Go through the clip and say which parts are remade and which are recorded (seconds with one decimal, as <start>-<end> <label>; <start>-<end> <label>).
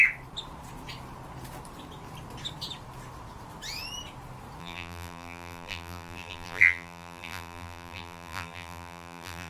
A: 0.0-4.6 recorded; 4.6-9.5 remade